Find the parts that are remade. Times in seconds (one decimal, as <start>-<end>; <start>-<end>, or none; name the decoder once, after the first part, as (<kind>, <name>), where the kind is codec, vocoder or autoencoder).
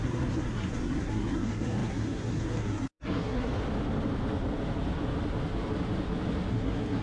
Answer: 0.0-3.5 (codec, SNAC); 6.5-7.0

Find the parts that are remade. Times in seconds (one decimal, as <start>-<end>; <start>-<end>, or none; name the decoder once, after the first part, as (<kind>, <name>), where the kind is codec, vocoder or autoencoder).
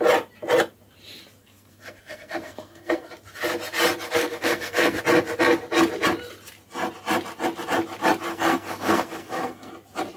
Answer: 1.4-3.1 (codec, SNAC); 4.2-5.0; 8.3-9.7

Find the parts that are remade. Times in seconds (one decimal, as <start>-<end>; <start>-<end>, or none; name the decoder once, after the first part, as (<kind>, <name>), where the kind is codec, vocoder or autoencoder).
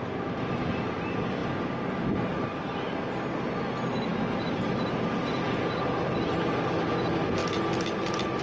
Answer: none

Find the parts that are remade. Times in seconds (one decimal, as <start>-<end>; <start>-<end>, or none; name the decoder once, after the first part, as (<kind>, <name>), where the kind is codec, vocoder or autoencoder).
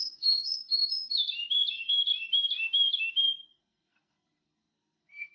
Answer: 0.0-0.7 (codec, SNAC); 1.7-2.1; 3.5-5.3